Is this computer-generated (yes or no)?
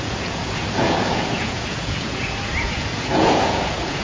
yes